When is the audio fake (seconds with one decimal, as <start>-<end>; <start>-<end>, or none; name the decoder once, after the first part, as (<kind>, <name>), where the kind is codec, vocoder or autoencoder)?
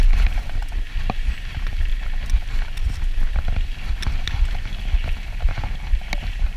0.0-0.6 (vocoder, BigVGAN v2); 1.5-1.9; 5.9-6.6